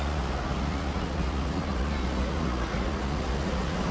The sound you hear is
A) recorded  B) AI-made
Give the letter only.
B